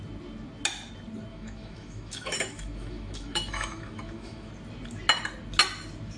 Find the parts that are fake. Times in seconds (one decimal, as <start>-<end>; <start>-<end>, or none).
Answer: 1.3-4.5